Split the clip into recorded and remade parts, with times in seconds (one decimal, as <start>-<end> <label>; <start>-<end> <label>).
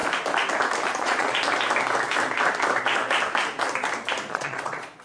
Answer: 0.0-0.9 recorded; 0.9-1.3 remade; 1.3-4.3 recorded; 4.3-5.0 remade